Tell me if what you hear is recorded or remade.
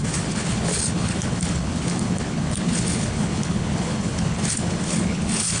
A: remade